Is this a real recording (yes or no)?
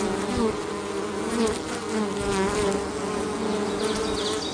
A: yes